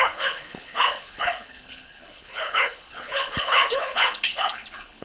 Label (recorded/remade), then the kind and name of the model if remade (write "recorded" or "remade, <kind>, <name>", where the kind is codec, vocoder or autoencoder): remade, codec, HILCodec